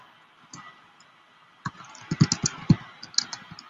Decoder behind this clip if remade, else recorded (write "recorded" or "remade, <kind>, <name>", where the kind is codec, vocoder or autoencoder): recorded